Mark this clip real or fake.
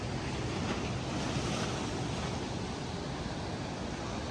real